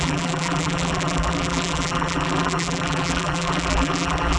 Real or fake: fake